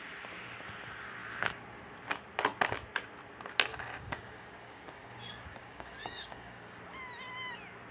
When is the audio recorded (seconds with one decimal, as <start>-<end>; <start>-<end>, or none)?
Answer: 0.0-3.7; 6.8-7.9